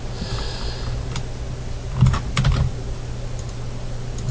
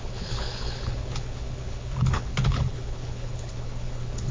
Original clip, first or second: first